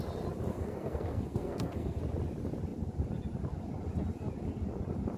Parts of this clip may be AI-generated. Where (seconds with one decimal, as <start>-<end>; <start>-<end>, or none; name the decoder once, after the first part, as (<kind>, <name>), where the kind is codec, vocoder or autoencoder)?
0.5-2.0 (codec, SNAC)